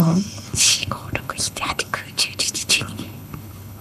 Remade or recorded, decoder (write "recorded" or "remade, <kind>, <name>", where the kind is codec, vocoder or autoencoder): remade, codec, HILCodec